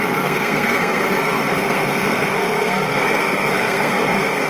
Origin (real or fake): fake